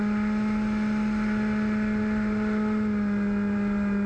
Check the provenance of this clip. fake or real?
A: real